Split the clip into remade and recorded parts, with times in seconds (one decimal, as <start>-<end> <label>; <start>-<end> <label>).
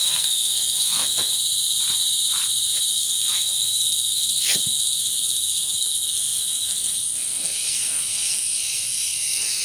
0.0-1.3 remade; 1.3-2.9 recorded; 2.9-9.6 remade